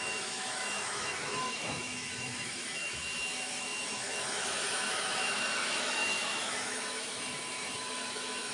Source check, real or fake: fake